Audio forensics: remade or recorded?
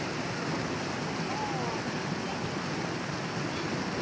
recorded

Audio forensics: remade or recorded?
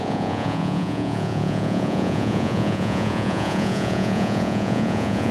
remade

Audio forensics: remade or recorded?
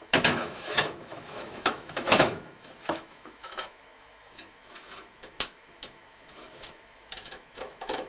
remade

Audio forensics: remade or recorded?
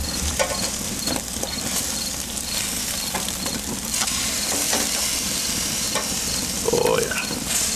recorded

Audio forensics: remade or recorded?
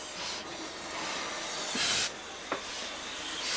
recorded